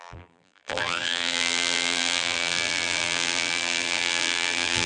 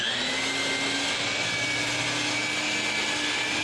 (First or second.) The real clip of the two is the second